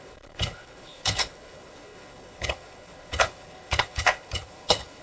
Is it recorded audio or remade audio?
remade